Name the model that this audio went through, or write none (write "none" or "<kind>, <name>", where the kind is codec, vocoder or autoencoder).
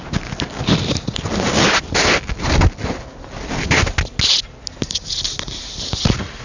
none